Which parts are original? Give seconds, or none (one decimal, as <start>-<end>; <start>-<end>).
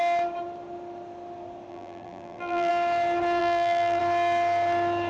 0.0-1.7; 2.7-3.4; 4.0-5.1